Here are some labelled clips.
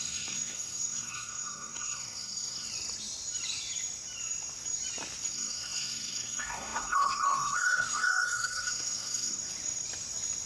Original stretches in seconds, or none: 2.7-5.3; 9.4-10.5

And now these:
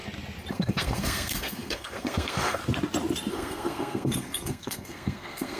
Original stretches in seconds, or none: 0.0-0.5; 2.6-3.3